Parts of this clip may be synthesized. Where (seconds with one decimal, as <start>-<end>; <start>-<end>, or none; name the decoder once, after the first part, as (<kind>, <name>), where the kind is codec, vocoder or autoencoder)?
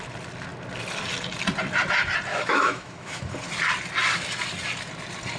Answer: 2.3-3.2 (autoencoder, DAC-VAE)